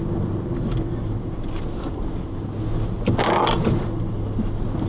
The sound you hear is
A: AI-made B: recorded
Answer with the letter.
B